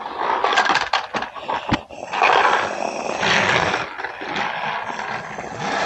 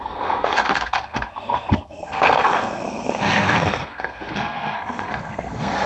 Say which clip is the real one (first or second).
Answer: first